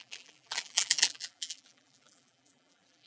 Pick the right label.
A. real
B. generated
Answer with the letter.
B